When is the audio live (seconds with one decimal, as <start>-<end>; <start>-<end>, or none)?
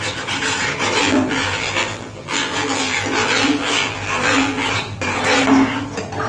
0.0-1.0; 4.7-6.3